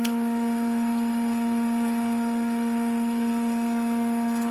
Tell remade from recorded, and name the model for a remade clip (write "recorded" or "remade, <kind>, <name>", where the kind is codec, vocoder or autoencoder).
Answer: remade, codec, SNAC